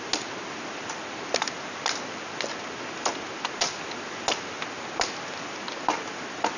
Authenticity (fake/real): real